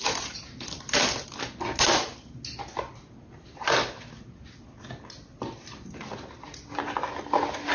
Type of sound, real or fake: real